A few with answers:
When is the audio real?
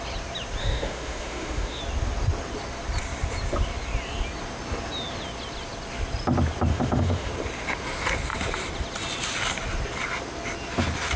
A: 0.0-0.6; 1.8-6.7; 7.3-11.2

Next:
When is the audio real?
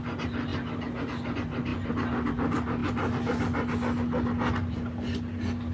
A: 0.0-5.7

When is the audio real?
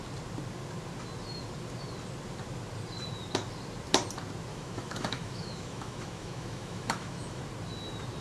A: 0.0-4.5; 7.4-8.2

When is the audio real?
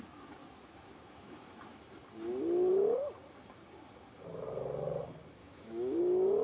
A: 0.0-0.4; 1.8-5.4; 6.0-6.4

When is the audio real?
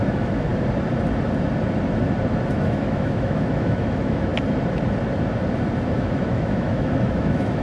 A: 0.5-2.5; 4.3-5.9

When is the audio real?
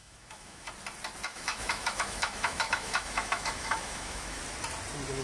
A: 0.7-1.3; 4.4-5.2